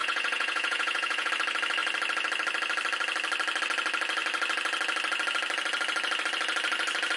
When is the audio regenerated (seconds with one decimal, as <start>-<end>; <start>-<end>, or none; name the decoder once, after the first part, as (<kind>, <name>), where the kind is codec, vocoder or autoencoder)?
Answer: 0.0-1.3 (vocoder, Vocos)